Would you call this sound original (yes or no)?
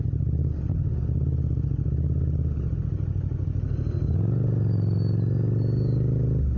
yes